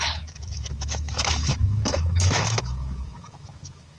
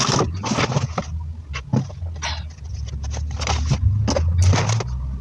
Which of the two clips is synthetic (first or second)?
first